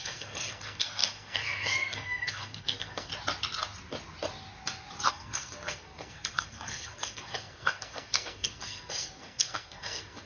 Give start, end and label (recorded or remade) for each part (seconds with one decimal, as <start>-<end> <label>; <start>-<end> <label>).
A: 0.0-3.1 remade; 3.1-5.1 recorded; 5.1-10.3 remade